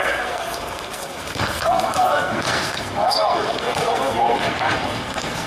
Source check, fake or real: fake